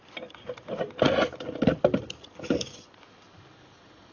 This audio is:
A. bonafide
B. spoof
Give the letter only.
A